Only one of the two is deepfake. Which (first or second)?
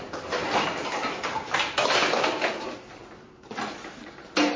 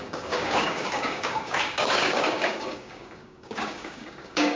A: second